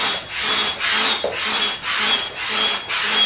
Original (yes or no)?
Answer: yes